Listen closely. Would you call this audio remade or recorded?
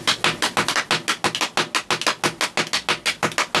recorded